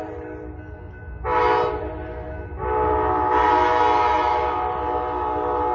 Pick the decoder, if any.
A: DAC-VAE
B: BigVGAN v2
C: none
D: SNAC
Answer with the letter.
C